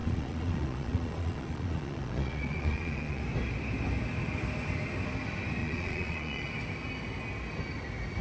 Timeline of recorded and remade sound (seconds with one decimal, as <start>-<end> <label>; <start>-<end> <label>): 0.0-3.2 remade; 3.2-5.6 recorded; 5.6-6.5 remade; 6.5-8.2 recorded